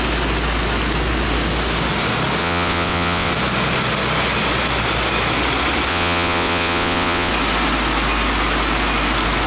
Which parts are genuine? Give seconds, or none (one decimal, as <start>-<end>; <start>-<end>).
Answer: 0.0-2.4; 3.3-5.9; 7.3-9.5